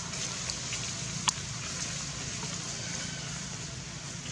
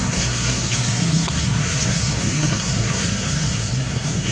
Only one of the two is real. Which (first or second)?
first